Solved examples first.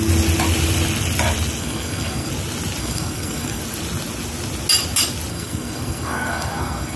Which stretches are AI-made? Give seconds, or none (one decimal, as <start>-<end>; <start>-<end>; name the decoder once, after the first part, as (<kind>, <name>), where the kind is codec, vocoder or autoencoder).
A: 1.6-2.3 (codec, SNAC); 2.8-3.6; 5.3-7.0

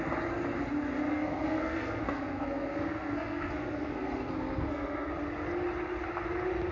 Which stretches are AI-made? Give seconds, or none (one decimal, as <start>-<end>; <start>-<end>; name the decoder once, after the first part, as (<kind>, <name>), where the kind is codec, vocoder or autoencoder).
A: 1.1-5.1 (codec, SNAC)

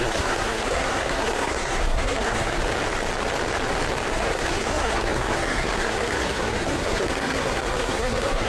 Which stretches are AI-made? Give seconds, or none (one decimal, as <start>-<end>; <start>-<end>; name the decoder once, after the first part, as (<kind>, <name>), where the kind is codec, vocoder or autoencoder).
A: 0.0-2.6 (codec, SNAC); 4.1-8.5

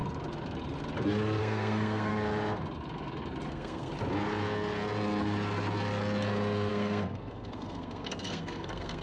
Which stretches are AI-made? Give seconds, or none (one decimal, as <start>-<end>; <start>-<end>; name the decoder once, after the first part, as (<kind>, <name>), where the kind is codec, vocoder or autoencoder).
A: 1.4-2.1 (codec, SNAC); 3.5-3.9; 6.7-9.0

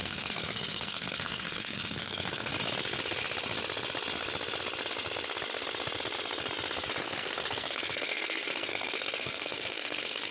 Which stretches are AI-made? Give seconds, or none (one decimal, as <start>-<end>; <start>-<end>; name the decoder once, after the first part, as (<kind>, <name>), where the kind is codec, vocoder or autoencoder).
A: 0.0-2.5 (codec, SNAC); 7.0-10.3

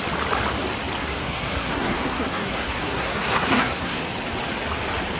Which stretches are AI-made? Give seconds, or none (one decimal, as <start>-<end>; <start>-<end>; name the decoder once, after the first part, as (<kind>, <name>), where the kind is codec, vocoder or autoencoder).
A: 1.0-4.0 (codec, SNAC)